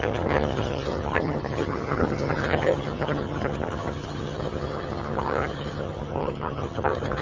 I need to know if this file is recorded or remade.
remade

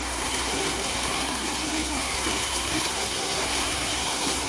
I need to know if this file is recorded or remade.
remade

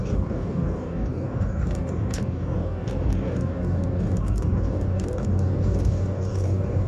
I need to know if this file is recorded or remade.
remade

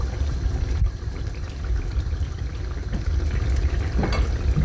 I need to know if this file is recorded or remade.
recorded